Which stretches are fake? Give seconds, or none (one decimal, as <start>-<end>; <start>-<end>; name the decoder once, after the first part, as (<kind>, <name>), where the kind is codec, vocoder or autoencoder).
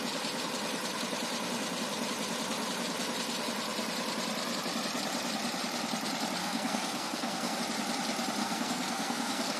6.4-7.6 (codec, SNAC); 8.4-9.6